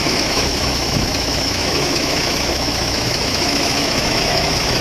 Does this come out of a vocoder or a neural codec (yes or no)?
yes